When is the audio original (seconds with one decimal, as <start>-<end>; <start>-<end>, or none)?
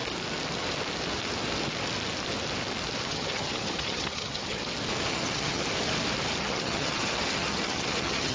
0.0-3.1; 4.6-5.1; 5.6-6.4